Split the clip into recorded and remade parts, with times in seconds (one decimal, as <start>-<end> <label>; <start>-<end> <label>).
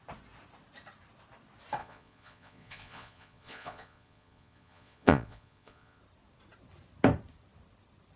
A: 0.0-1.8 recorded; 1.8-6.0 remade; 6.0-8.2 recorded